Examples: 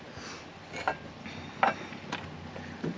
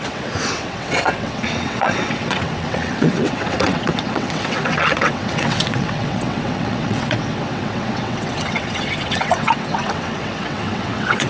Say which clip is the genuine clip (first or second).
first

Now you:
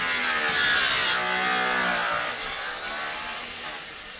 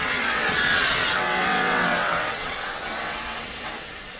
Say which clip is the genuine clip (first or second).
first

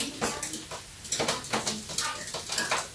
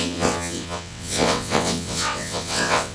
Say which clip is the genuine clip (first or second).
first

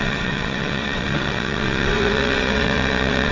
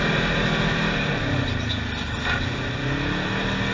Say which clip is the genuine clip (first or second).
second